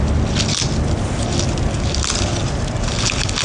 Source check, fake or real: real